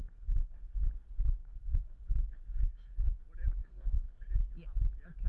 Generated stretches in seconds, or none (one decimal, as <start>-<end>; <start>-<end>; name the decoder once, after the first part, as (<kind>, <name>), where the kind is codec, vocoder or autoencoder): 0.0-0.9 (codec, SNAC); 1.4-3.2; 3.6-4.3

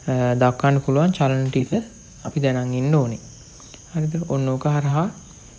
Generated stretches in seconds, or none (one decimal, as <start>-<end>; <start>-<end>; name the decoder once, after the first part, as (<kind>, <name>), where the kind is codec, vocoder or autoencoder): 1.6-2.3 (codec, SNAC)

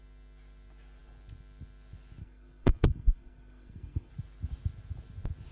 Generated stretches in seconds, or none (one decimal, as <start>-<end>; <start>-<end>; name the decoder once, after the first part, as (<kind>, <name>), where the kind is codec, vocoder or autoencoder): 2.2-4.1 (codec, SNAC)

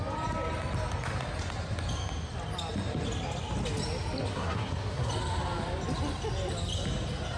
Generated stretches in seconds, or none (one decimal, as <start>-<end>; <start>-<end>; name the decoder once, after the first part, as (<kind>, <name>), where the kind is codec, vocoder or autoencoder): 4.3-5.1 (codec, SNAC)

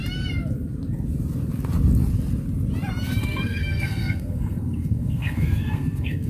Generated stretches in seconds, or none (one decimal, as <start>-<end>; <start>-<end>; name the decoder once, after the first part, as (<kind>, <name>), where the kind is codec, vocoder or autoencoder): 3.2-6.3 (codec, SNAC)

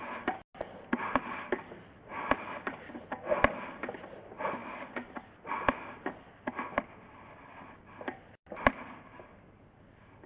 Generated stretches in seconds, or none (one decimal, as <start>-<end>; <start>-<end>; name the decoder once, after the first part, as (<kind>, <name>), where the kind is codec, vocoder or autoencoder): none